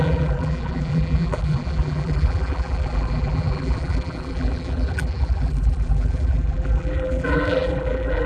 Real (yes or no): no